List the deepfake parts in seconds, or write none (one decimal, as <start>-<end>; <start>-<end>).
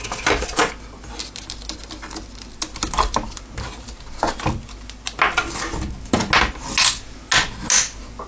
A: none